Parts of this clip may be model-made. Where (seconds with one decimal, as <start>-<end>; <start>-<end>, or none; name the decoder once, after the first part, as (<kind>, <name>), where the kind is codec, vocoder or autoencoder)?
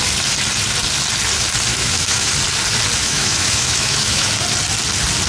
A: 1.7-2.3 (autoencoder, DAC-VAE); 3.0-4.3